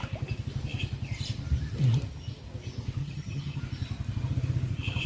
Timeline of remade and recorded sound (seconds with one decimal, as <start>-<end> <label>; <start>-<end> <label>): 0.0-3.0 recorded; 3.0-3.6 remade; 3.6-5.1 recorded